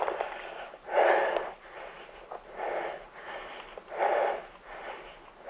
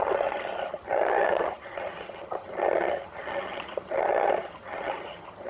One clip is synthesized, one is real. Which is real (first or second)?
first